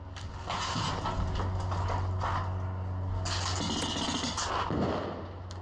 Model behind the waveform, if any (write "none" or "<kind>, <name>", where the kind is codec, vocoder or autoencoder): none